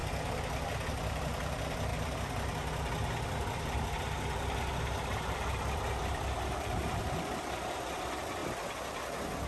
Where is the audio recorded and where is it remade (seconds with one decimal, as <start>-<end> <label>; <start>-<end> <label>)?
0.0-8.4 remade; 8.4-9.5 recorded